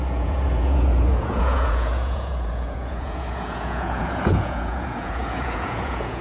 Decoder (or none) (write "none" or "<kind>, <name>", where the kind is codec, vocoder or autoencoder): vocoder, Vocos